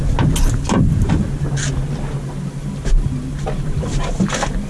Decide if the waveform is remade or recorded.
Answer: recorded